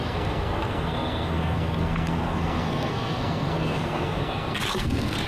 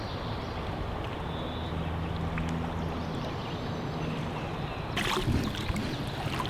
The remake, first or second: first